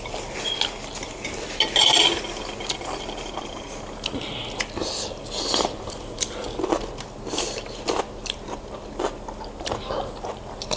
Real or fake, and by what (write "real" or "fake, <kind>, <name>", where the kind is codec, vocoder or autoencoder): real